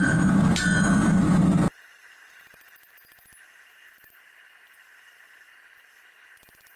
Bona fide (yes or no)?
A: no